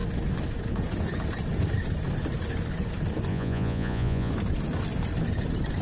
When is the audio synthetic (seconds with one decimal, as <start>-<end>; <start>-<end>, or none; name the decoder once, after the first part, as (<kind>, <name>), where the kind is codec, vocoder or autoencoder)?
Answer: 3.3-4.3 (vocoder, Vocos)